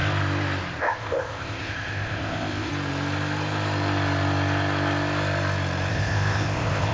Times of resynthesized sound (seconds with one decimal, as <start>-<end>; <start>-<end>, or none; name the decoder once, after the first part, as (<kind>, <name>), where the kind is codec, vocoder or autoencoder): 0.8-2.7 (codec, ZipCodec); 5.9-6.9